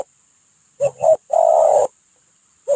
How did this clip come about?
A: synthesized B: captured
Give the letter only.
B